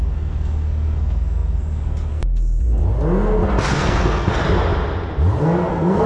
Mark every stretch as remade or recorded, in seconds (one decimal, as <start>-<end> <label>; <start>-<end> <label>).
0.0-2.8 remade; 2.8-3.7 recorded; 3.7-4.4 remade; 4.4-5.4 recorded; 5.4-6.1 remade